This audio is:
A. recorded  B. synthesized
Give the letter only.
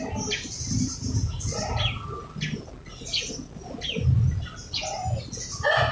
A